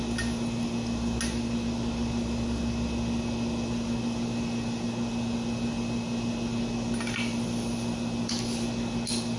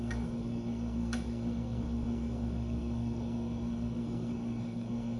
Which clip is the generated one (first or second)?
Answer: second